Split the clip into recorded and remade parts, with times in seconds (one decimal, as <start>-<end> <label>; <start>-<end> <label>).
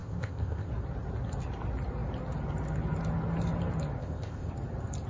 0.0-0.7 remade; 0.7-4.0 recorded; 4.0-4.5 remade; 4.5-5.1 recorded